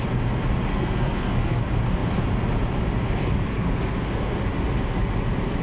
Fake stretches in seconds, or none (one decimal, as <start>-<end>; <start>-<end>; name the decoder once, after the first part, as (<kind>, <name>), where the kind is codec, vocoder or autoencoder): 0.7-1.6 (codec, SNAC); 3.5-4.4